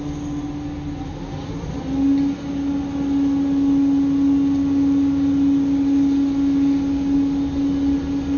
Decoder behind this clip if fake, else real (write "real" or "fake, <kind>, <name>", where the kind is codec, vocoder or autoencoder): real